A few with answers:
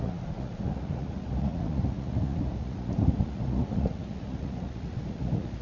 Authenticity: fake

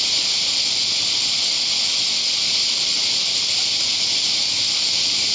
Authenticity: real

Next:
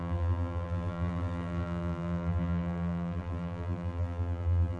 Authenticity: fake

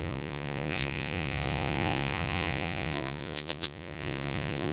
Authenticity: fake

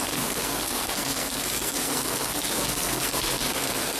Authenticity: fake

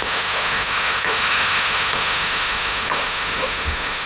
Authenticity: fake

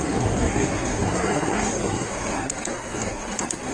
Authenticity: fake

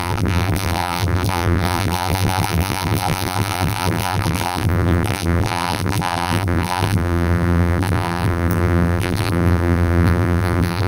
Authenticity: fake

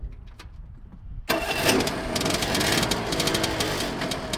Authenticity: real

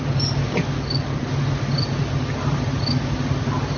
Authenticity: real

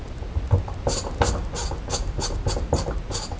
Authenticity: real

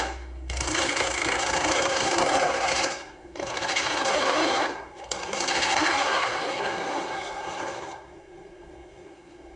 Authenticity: fake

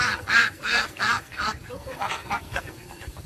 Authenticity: fake